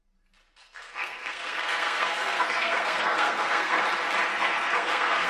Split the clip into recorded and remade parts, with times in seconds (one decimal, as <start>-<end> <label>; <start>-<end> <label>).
0.0-0.6 recorded; 0.6-3.8 remade; 3.8-4.3 recorded; 4.3-5.3 remade